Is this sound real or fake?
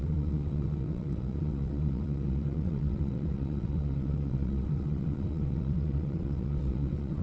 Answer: fake